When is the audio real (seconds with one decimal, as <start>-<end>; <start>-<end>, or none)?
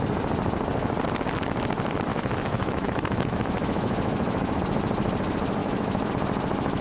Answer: 0.0-2.1; 4.6-5.6; 6.1-6.8